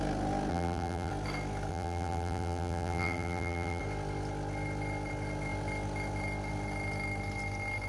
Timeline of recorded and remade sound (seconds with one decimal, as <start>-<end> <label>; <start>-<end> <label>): 0.0-0.5 recorded; 0.5-1.1 remade; 1.1-1.7 recorded; 1.7-3.8 remade; 3.8-7.9 recorded